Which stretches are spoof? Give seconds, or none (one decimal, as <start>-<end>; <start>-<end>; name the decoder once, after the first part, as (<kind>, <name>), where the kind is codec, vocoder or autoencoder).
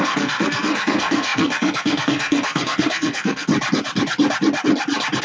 0.0-3.5 (codec, SNAC)